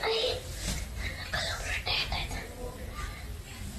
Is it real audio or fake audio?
real